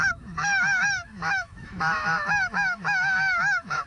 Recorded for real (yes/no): no